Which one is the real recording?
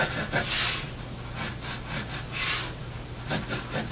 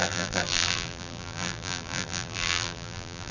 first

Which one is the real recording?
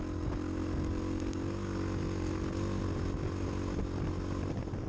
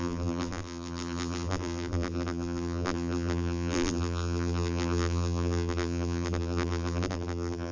first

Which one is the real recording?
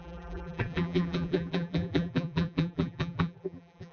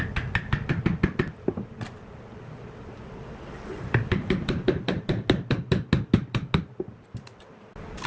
second